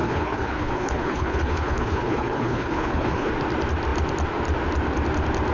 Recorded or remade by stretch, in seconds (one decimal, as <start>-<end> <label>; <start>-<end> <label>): 0.0-3.3 remade; 3.3-5.5 recorded